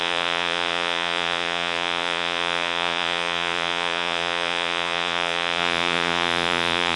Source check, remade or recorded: remade